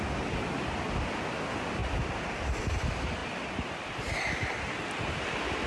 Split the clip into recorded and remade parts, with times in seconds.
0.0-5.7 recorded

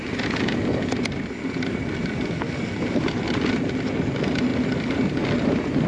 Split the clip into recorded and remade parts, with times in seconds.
0.0-5.9 recorded

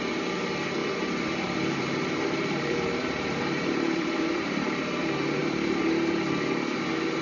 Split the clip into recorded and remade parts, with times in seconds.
0.0-0.8 recorded; 0.8-4.8 remade; 4.8-5.4 recorded; 5.4-5.9 remade; 5.9-7.2 recorded

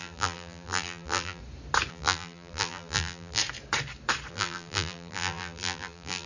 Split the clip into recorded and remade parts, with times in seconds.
0.0-1.4 remade; 1.4-1.9 recorded; 1.9-3.4 remade; 3.4-4.3 recorded; 4.3-6.3 remade

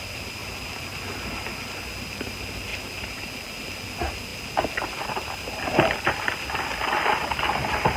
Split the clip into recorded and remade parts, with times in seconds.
0.0-0.4 recorded; 0.4-1.5 remade; 1.5-2.7 recorded; 2.7-3.2 remade; 3.2-8.0 recorded

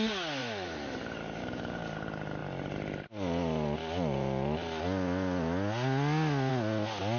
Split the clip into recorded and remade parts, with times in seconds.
0.0-0.4 recorded; 0.4-1.9 remade; 1.9-7.2 recorded

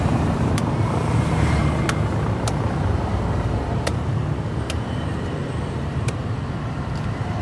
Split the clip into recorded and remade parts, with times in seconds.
0.0-1.6 remade; 1.6-2.1 recorded; 2.1-7.4 remade